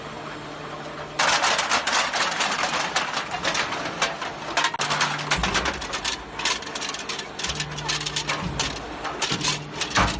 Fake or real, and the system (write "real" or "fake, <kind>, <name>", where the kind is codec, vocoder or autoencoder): real